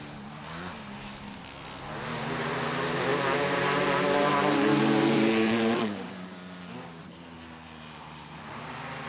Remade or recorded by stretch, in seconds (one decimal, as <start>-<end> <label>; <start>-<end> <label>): 0.0-3.1 recorded; 3.1-6.1 remade; 6.1-7.0 recorded; 7.0-8.7 remade; 8.7-9.1 recorded